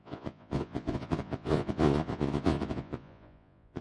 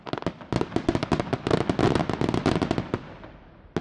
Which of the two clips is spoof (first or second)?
first